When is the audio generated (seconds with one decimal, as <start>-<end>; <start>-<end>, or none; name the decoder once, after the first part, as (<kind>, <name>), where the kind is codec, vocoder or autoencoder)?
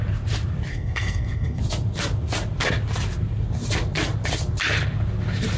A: 0.7-1.6 (codec, SNAC)